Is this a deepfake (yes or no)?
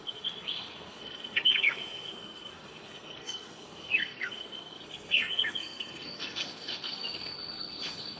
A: yes